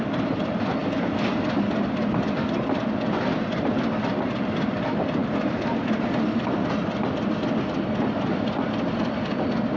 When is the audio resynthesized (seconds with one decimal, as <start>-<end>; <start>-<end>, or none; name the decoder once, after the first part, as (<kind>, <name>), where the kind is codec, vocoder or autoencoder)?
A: none